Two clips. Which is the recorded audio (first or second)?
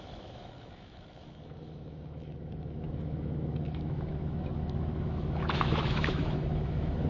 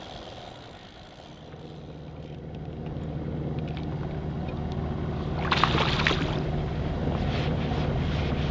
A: second